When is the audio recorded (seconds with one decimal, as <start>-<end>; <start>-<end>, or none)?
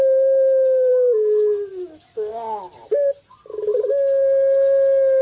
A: 2.3-3.9